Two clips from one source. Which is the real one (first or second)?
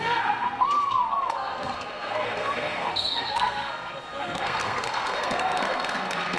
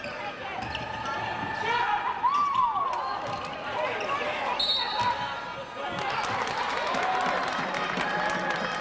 second